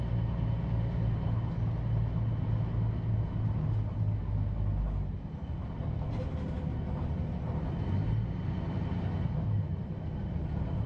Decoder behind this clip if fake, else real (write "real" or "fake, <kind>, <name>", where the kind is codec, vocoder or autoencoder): real